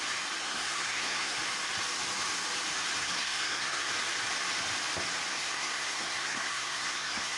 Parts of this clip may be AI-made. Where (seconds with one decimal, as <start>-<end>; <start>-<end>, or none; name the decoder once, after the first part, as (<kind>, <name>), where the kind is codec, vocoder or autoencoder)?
0.4-1.4 (codec, SNAC); 3.0-3.9; 5.3-7.4